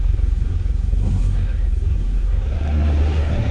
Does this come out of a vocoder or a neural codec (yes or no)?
yes